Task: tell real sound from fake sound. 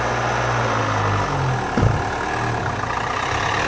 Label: real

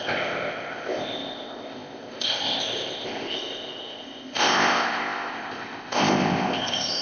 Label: fake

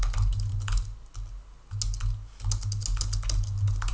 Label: real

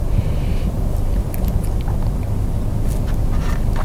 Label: real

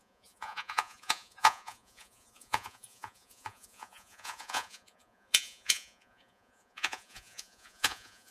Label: fake